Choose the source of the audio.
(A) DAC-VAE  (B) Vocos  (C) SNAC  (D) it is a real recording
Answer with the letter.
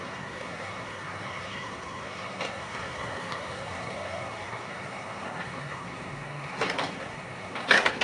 C